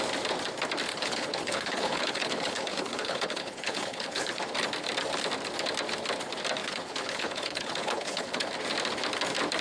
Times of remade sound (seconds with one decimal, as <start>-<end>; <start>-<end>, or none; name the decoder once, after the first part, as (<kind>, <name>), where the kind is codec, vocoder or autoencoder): 0.9-4.4 (codec, HILCodec); 6.6-8.5